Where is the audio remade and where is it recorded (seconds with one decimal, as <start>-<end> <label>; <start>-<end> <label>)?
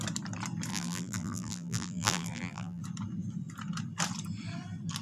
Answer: 0.0-0.7 recorded; 0.7-2.8 remade; 2.8-5.0 recorded